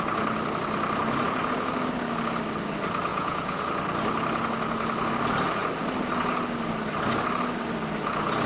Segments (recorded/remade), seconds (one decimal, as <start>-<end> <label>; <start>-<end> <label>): 0.0-3.1 recorded; 3.1-3.6 remade; 3.6-8.5 recorded